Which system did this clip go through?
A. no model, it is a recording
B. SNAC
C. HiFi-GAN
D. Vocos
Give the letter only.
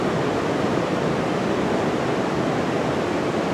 A